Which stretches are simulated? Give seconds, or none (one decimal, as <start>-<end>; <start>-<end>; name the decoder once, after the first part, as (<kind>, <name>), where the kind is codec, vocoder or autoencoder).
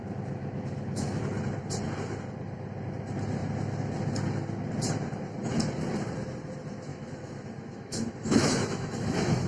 0.4-1.2 (autoencoder, DAC-VAE); 6.9-9.5